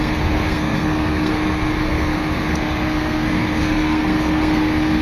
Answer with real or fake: fake